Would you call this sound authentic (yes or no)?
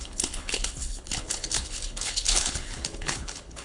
no